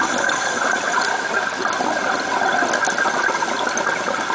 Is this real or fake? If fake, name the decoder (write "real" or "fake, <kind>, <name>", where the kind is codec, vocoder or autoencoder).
real